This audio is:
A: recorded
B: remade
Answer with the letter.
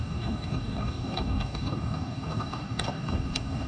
B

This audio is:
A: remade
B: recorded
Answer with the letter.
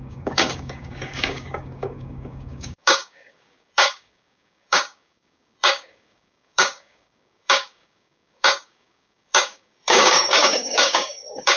A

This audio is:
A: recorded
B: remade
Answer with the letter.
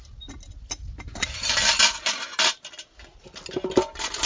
A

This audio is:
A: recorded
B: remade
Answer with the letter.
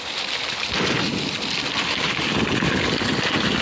A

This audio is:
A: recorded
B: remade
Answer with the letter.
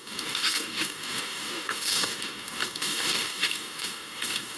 B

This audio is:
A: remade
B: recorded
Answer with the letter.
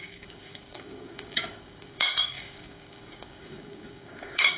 A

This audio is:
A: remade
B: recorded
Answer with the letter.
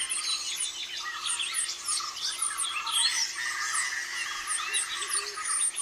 B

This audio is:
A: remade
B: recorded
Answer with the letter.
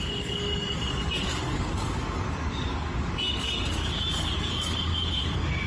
A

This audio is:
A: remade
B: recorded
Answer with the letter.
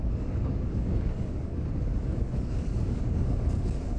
A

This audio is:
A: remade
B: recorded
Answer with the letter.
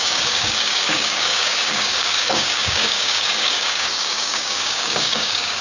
A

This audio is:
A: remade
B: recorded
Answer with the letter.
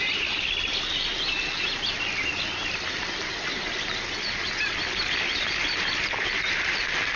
B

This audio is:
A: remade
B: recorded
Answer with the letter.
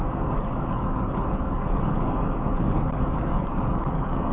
A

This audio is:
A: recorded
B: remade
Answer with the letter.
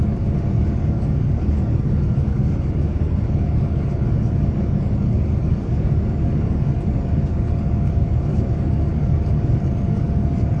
B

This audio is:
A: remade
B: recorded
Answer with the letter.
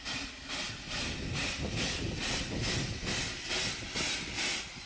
B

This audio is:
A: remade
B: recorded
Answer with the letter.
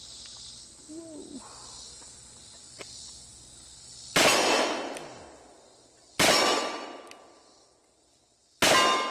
B